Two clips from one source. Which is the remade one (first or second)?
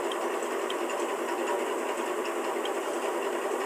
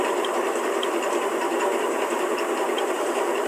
second